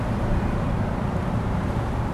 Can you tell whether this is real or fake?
real